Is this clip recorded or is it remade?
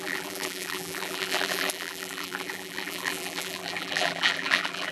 remade